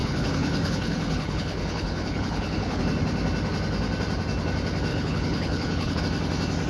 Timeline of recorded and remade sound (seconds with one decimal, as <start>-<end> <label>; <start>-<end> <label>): 0.0-2.8 remade; 2.8-4.9 recorded; 4.9-6.0 remade; 6.0-6.7 recorded